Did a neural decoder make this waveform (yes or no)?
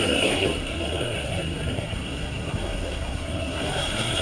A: yes